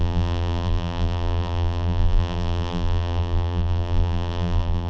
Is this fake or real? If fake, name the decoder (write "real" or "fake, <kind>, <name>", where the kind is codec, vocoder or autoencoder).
fake, vocoder, BigVGAN v2